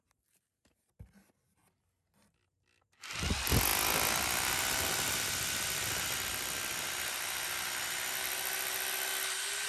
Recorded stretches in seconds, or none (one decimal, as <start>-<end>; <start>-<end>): 0.0-9.7